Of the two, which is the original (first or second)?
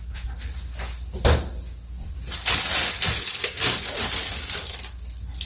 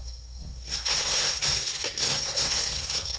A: first